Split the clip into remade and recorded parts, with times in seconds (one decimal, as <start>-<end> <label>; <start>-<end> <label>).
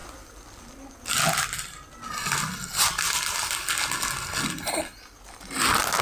0.0-6.0 recorded